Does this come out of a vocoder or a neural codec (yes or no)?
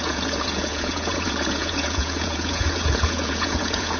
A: yes